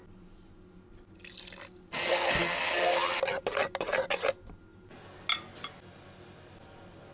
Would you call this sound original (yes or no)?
yes